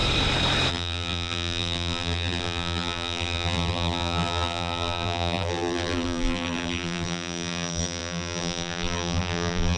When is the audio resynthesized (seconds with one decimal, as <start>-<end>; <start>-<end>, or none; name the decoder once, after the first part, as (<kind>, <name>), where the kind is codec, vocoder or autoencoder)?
0.7-9.8 (vocoder, BigVGAN v2)